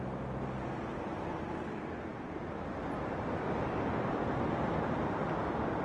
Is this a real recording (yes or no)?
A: yes